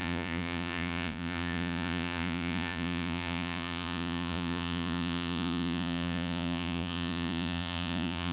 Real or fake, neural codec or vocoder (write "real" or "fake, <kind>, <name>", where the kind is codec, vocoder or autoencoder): fake, vocoder, Vocos